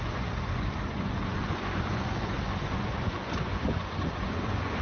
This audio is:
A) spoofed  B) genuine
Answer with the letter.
A